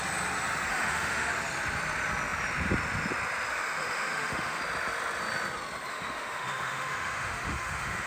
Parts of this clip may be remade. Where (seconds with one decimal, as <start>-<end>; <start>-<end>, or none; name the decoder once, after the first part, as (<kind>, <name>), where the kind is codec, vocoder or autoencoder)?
0.7-1.3 (autoencoder, DAC-VAE); 3.5-4.6; 5.9-8.1